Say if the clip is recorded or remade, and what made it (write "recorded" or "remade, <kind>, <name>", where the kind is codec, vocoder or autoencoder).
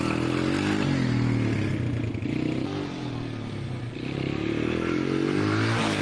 recorded